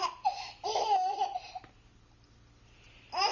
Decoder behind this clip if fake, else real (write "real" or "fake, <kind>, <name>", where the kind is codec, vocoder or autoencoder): real